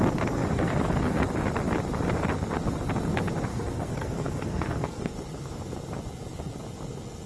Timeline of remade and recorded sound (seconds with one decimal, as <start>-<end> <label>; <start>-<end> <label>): 0.0-0.5 recorded; 0.5-1.2 remade; 1.2-3.5 recorded; 3.5-5.1 remade; 5.1-7.3 recorded